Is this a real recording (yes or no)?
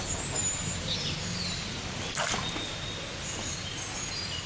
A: yes